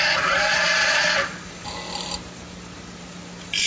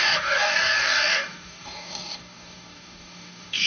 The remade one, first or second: second